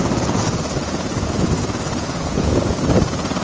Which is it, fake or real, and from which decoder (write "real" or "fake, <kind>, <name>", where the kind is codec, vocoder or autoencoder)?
fake, vocoder, Vocos